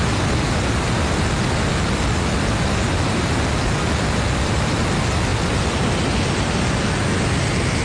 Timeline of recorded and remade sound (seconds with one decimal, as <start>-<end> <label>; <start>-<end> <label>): 0.0-7.8 recorded